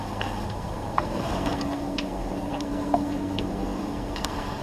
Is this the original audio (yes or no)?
no